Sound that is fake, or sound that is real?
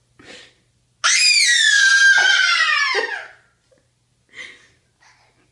real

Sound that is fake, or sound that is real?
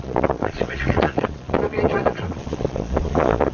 fake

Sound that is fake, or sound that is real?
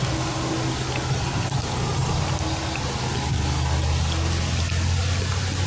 real